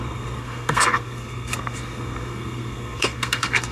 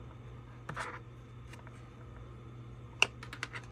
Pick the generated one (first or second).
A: first